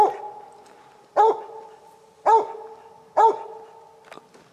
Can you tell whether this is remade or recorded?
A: recorded